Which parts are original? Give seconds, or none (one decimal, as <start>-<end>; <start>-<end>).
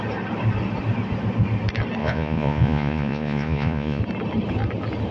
0.0-2.0; 4.0-5.1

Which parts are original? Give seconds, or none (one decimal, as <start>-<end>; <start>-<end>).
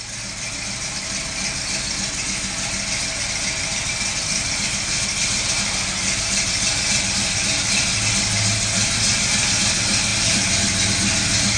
0.0-11.6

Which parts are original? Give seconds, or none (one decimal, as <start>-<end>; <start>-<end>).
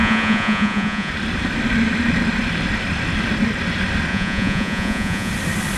1.1-4.1; 5.3-5.8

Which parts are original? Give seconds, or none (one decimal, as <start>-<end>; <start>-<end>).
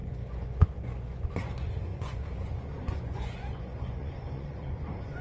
none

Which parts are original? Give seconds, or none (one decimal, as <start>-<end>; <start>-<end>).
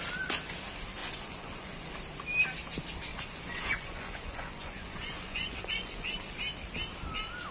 0.0-1.0; 1.9-3.1; 6.1-7.5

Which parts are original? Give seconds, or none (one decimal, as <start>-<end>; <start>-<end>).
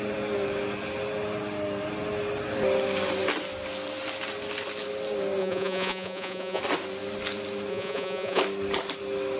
0.0-5.4; 6.6-7.7; 8.4-9.4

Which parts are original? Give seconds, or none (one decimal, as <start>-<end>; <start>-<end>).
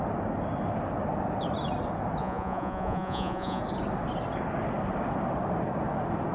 0.0-2.2; 3.6-6.3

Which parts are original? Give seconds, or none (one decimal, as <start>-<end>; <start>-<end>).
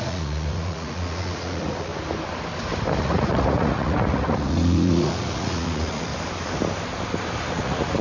1.9-3.0; 6.1-7.5